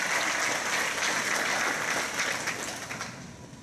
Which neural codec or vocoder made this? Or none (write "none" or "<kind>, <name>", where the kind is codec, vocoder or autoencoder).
none